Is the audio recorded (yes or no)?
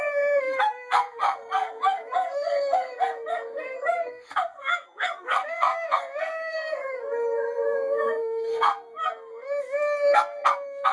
no